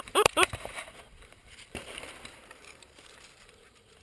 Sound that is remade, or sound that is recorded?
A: remade